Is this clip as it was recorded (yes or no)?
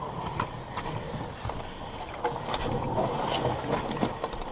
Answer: yes